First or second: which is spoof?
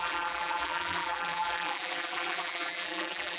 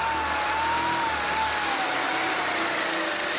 first